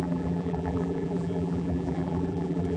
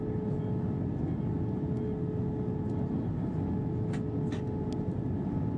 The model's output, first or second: first